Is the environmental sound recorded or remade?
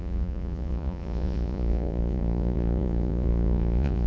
remade